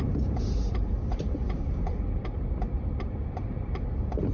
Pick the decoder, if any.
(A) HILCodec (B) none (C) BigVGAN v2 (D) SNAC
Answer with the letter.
C